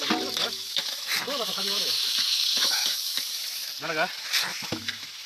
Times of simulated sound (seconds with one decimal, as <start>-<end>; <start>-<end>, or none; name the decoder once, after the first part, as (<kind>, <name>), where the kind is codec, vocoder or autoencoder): 0.5-3.7 (autoencoder, DAC-VAE); 4.5-5.3